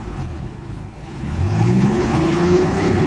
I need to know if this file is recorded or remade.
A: remade